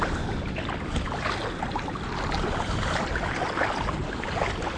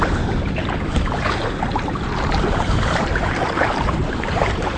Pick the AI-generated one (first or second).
second